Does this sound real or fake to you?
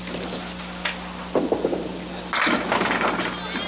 real